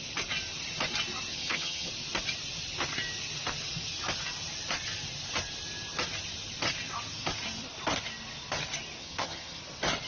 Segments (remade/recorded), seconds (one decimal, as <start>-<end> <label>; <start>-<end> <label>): 0.0-1.3 recorded; 1.3-1.9 remade; 1.9-9.0 recorded; 9.0-9.6 remade; 9.6-10.1 recorded

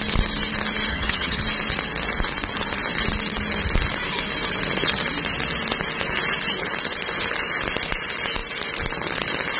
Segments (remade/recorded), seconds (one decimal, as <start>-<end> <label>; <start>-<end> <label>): 0.0-0.9 recorded; 0.9-1.4 remade; 1.4-9.6 recorded